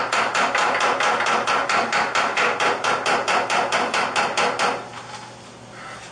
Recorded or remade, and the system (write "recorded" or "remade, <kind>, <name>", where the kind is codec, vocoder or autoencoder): recorded